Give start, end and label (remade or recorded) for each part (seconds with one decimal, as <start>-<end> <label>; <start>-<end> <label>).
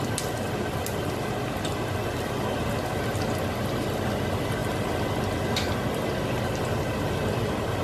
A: 0.0-7.8 recorded